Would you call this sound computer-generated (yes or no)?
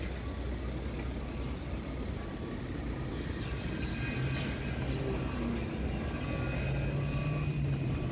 no